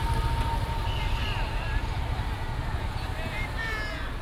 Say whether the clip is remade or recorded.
recorded